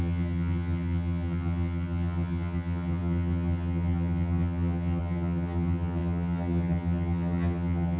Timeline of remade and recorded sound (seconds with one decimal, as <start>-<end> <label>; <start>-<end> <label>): 0.0-8.0 remade